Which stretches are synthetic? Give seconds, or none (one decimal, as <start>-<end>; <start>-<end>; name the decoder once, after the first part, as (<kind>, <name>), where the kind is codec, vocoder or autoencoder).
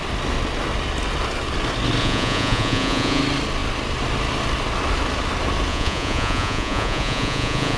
2.0-3.2 (vocoder, Vocos); 5.7-7.8